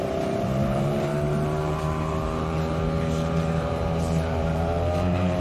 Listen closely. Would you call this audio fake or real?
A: fake